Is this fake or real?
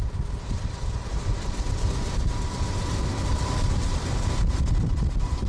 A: fake